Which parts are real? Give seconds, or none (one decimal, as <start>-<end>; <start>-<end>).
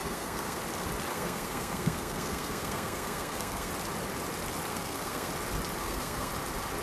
0.6-1.1; 3.7-4.7; 5.3-5.8; 6.3-6.8